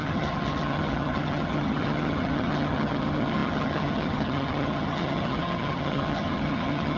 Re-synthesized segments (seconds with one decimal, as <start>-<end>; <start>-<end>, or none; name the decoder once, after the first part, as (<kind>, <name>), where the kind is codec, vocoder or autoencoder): 0.0-7.0 (vocoder, HiFi-GAN)